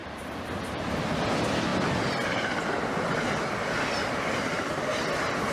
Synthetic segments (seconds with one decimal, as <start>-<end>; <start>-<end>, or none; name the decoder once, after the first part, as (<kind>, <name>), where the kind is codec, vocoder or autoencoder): none